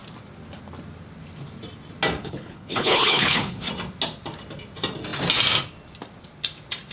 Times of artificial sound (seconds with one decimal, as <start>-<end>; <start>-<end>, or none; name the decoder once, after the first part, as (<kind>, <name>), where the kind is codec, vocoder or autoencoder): 2.2-3.7 (codec, HILCodec)

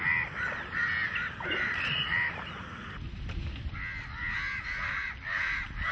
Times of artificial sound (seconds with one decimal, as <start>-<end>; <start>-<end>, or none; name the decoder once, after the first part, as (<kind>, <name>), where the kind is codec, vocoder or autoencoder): 2.8-3.4 (vocoder, BigVGAN v2)

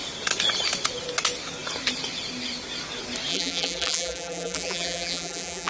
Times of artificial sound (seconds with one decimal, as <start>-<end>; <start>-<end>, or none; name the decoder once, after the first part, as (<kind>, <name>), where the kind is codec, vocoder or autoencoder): 3.3-5.7 (vocoder, BigVGAN v2)

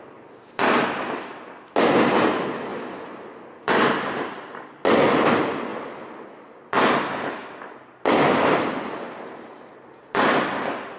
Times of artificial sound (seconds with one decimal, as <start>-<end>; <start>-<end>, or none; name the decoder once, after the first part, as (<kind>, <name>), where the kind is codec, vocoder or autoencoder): none

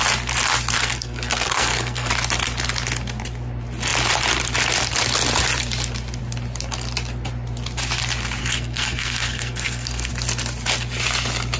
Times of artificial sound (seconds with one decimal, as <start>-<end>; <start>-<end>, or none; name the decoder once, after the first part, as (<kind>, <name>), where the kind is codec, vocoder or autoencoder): 0.8-2.1 (codec, SNAC); 8.4-10.1

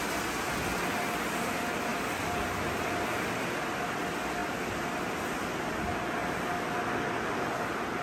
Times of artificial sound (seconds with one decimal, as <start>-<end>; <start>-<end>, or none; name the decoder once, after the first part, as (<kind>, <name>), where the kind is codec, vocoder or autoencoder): 1.9-3.4 (vocoder, BigVGAN v2); 4.4-5.0

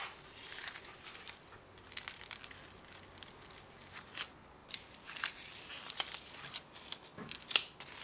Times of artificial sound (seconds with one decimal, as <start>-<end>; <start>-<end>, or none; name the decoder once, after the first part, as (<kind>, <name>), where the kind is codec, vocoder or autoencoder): 0.4-1.8 (vocoder, BigVGAN v2); 4.6-5.5

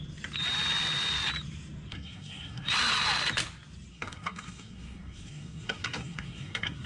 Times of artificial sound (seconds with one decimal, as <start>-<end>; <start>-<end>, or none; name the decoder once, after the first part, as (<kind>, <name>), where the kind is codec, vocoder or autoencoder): 1.9-2.7 (codec, SNAC); 3.9-6.9